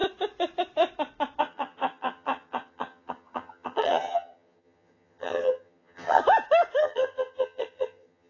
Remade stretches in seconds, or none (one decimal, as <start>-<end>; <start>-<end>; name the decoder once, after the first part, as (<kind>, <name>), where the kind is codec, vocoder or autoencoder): 1.4-6.2 (vocoder, HiFi-GAN); 6.8-8.3